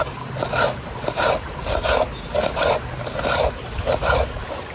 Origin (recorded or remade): recorded